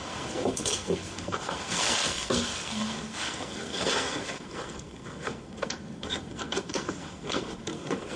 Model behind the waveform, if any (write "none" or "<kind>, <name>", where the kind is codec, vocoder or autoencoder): codec, SNAC